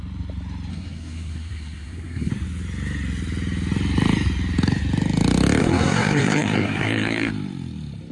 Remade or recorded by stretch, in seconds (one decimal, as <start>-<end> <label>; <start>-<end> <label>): 0.0-0.7 recorded; 0.7-2.3 remade; 2.3-5.6 recorded; 5.6-7.3 remade; 7.3-8.1 recorded